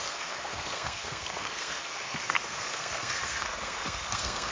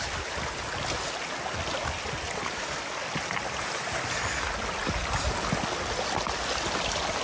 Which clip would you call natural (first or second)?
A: second